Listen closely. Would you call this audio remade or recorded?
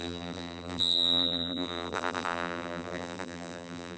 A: remade